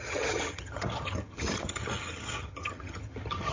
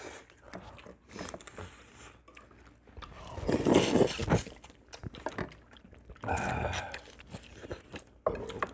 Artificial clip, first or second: first